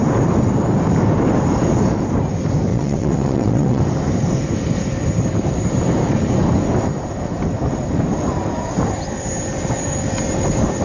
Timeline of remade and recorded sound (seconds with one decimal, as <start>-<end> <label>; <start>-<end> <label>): 0.0-2.7 recorded; 2.7-3.8 remade; 3.8-10.8 recorded